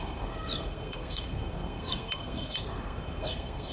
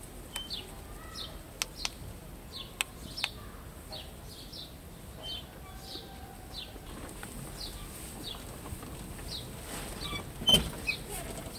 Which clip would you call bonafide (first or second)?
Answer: second